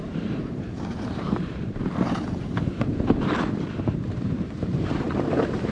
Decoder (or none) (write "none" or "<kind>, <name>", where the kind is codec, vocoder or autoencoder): vocoder, BigVGAN v2